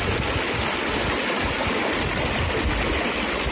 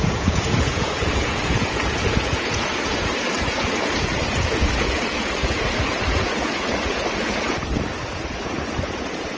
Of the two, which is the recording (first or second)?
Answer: first